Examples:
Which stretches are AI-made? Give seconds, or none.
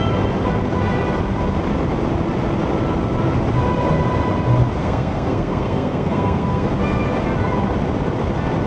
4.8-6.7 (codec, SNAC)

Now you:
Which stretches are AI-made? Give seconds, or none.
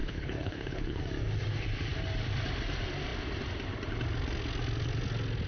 0.0-1.0 (codec, HILCodec)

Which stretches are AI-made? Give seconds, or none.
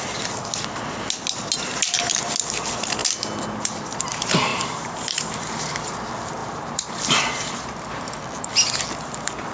4.5-5.3 (vocoder, BigVGAN v2); 6.4-7.2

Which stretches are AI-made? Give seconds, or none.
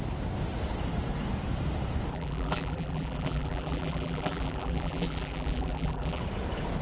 2.1-6.2 (vocoder, BigVGAN v2)